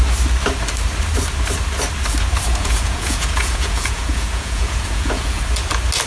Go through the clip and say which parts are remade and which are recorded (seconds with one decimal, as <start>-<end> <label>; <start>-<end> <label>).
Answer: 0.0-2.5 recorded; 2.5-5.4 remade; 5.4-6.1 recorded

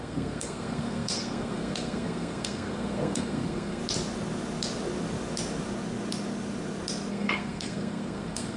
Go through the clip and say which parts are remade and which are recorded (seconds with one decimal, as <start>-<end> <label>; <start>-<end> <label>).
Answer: 0.0-3.8 remade; 3.8-7.1 recorded; 7.1-8.6 remade

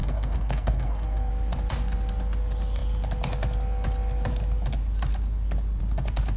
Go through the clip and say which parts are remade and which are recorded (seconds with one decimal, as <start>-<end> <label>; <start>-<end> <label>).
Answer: 0.0-1.3 remade; 1.3-6.4 recorded

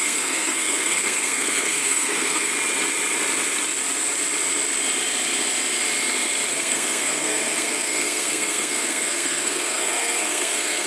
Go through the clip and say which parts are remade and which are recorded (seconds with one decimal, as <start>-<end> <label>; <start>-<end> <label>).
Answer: 0.0-2.5 remade; 2.5-6.5 recorded; 6.5-10.9 remade

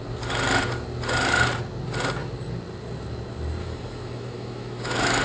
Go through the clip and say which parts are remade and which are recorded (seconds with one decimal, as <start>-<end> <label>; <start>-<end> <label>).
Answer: 0.0-3.6 recorded; 3.6-5.2 remade